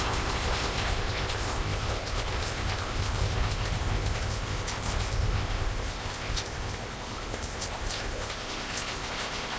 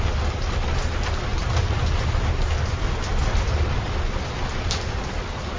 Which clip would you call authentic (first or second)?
second